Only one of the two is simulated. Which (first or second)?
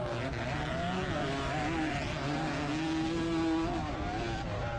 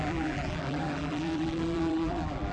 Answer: second